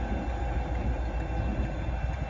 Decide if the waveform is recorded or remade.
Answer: recorded